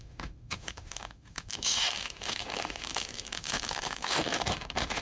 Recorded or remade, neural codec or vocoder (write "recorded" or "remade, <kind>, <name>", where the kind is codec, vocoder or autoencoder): remade, autoencoder, DAC-VAE